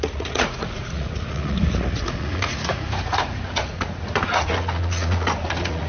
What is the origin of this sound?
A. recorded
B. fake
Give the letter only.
B